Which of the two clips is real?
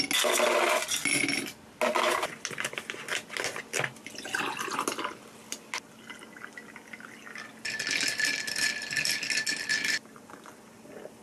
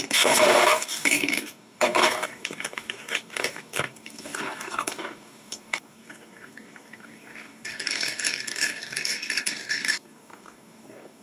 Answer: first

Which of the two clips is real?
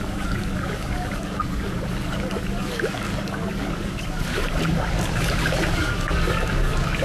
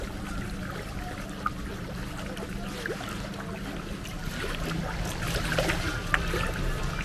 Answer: second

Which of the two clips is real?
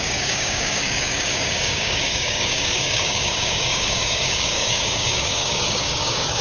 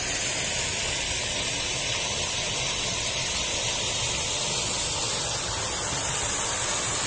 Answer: second